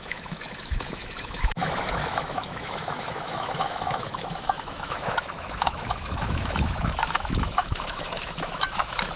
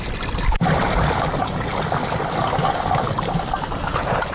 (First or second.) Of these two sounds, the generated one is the first